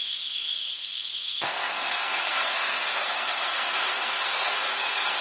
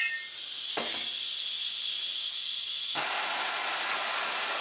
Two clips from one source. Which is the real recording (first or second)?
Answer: second